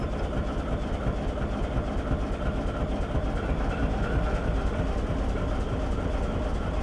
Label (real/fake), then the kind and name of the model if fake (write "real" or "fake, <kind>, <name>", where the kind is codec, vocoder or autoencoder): real